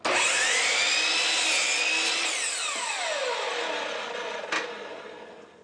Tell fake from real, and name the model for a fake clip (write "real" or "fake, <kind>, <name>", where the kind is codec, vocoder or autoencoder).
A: real